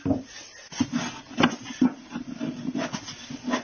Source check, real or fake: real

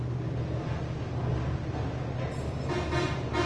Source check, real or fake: real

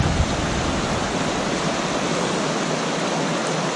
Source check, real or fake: real